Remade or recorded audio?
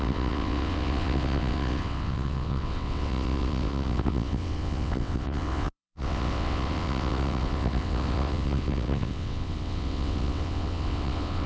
remade